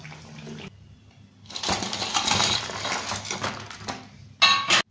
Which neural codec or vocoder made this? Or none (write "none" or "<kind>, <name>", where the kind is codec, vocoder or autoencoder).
none